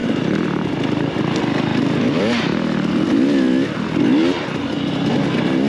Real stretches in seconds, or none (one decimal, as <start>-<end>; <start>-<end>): 0.0-5.7